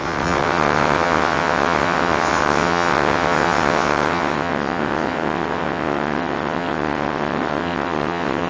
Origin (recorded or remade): remade